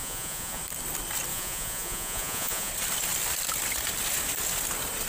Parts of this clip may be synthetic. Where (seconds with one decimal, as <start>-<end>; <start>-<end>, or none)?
0.0-0.6; 1.3-2.7